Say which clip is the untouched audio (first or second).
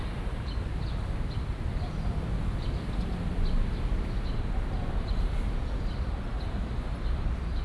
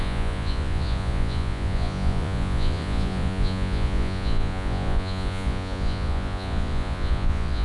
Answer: first